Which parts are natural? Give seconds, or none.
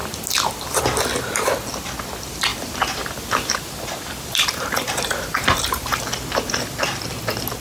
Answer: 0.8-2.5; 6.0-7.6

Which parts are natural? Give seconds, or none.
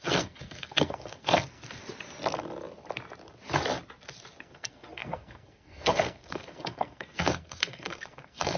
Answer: 1.8-4.4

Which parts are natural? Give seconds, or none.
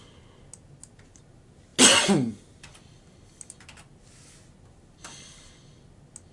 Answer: 0.0-6.3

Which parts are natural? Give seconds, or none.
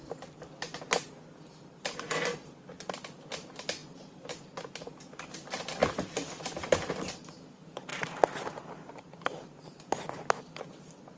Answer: 0.8-11.2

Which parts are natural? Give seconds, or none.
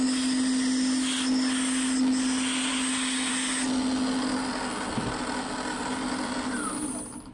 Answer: 0.0-7.3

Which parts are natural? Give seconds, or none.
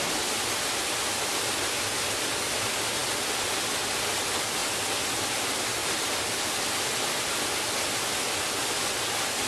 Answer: 0.0-5.8; 6.5-9.5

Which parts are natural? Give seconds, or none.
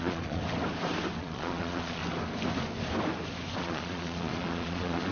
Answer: 0.4-1.2; 2.0-3.6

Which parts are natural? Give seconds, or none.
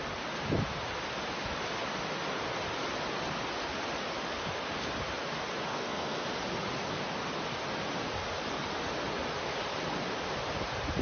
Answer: 0.0-5.7; 6.3-11.0